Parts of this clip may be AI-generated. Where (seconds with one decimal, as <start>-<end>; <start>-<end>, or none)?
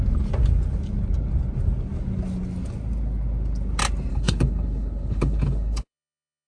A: 4.1-6.5